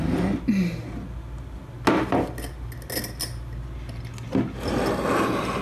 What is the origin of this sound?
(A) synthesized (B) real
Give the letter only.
B